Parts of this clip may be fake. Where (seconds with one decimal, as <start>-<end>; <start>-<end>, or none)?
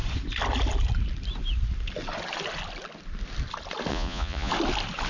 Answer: 3.9-4.5